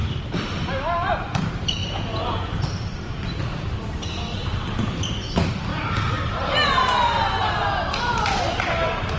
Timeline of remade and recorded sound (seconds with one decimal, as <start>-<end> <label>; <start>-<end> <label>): 0.0-1.1 remade; 1.1-1.8 recorded; 1.8-4.8 remade; 4.8-9.2 recorded

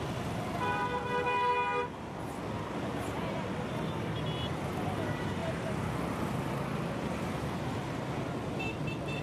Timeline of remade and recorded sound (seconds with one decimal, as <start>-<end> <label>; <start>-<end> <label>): 0.0-9.2 recorded

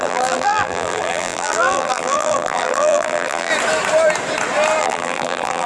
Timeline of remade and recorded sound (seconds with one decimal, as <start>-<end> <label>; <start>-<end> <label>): 0.0-3.5 remade; 3.5-4.8 recorded; 4.8-5.7 remade